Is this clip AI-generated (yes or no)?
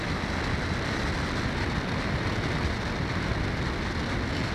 no